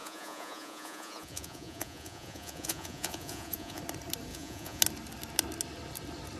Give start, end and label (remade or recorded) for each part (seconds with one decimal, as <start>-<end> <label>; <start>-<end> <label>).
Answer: 0.0-3.8 remade; 3.8-4.3 recorded; 4.3-4.8 remade; 4.8-6.4 recorded